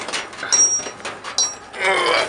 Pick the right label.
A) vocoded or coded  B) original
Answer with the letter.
B